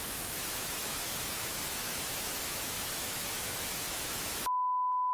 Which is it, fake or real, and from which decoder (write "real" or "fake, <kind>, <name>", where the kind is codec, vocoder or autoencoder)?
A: fake, autoencoder, DAC-VAE